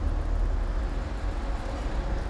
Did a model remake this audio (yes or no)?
no